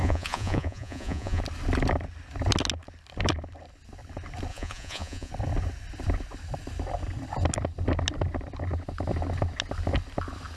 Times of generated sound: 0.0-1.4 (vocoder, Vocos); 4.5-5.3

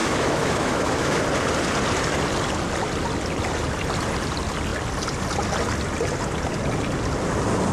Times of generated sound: 0.0-1.2 (autoencoder, DAC-VAE)

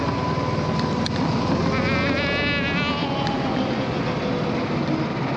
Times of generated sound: 3.0-4.0 (vocoder, Vocos)

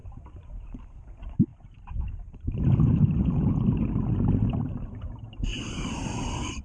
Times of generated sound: none